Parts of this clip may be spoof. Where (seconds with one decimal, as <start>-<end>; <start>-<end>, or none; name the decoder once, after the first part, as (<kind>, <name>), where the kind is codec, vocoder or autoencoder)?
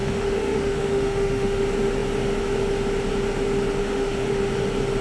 0.0-1.6 (autoencoder, DAC-VAE); 3.8-4.4